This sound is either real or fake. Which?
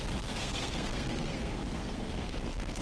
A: fake